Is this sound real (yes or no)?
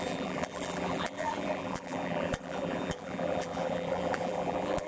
no